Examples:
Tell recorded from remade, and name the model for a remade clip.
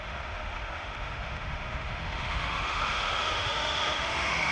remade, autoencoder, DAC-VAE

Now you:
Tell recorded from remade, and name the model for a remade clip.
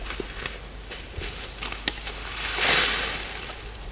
recorded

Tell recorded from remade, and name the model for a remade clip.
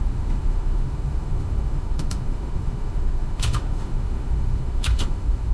remade, autoencoder, DAC-VAE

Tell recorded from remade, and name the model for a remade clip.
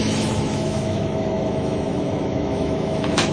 remade, autoencoder, DAC-VAE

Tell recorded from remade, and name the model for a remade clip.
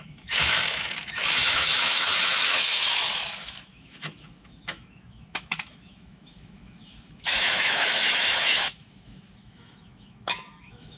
remade, autoencoder, DAC-VAE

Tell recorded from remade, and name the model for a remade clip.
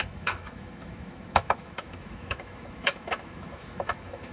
remade, autoencoder, DAC-VAE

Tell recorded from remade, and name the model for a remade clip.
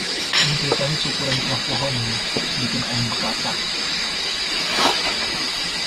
remade, autoencoder, DAC-VAE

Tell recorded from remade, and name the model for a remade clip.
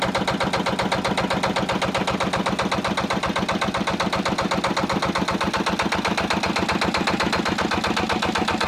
recorded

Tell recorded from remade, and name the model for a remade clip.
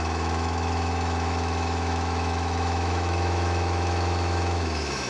remade, autoencoder, DAC-VAE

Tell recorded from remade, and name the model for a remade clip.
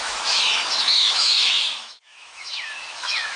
remade, autoencoder, DAC-VAE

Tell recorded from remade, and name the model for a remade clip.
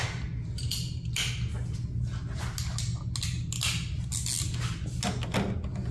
recorded